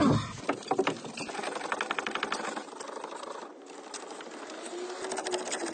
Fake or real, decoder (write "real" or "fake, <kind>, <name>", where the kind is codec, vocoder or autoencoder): real